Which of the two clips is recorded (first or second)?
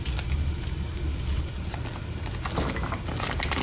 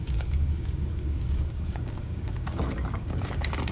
first